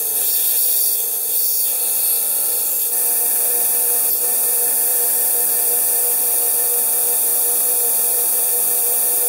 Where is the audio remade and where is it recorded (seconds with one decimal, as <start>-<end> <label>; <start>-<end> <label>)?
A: 0.0-1.2 recorded; 1.2-2.8 remade; 2.8-4.9 recorded; 4.9-6.5 remade; 6.5-7.3 recorded; 7.3-9.3 remade